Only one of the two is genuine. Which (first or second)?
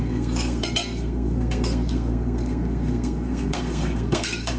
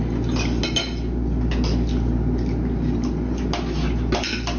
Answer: second